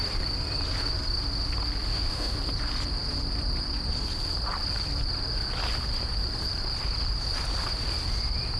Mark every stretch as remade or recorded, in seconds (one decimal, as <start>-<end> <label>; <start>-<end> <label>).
0.0-1.9 recorded; 1.9-2.4 remade; 2.4-8.6 recorded